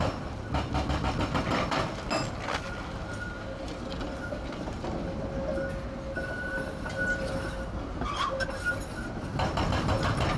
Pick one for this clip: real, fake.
real